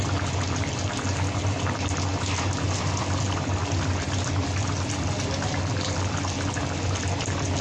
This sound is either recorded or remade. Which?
recorded